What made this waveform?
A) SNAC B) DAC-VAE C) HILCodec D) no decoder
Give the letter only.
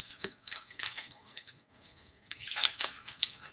A